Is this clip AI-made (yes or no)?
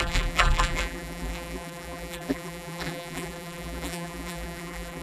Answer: yes